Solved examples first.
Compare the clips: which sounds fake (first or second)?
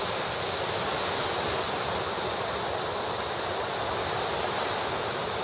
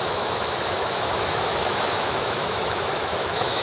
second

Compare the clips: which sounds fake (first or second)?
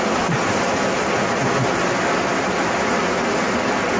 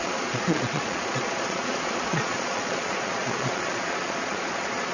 second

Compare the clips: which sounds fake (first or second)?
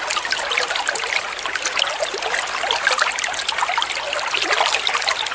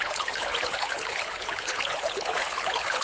second